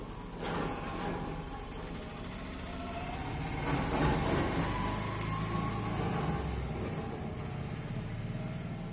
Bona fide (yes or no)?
yes